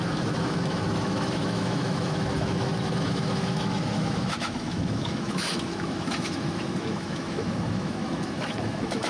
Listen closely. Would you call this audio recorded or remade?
remade